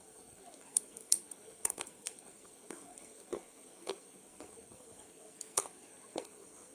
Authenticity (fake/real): fake